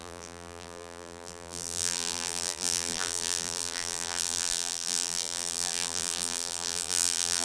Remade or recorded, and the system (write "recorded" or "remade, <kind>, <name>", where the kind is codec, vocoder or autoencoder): remade, vocoder, BigVGAN v2